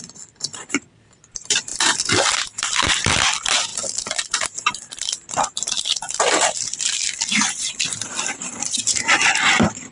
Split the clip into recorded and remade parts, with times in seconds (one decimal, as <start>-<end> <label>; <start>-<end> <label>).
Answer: 0.0-9.9 remade